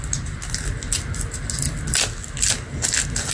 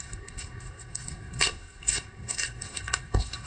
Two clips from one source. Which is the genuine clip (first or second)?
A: first